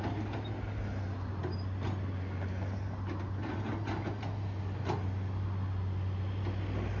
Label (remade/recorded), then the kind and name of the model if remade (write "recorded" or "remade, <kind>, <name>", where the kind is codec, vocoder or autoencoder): recorded